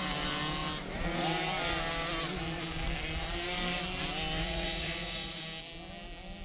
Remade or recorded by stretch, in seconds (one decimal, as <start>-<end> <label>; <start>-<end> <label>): 0.0-4.4 recorded; 4.4-5.4 remade; 5.4-6.4 recorded